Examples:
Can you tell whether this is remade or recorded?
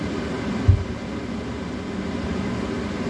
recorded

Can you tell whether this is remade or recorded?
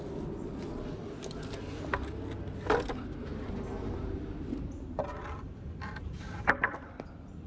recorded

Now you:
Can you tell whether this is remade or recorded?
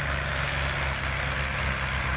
recorded